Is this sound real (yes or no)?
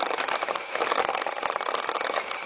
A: yes